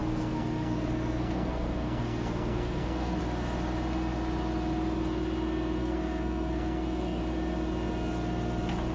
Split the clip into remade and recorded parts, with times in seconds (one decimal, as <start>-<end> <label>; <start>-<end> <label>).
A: 0.0-3.2 remade; 3.2-5.8 recorded; 5.8-7.2 remade; 7.2-8.9 recorded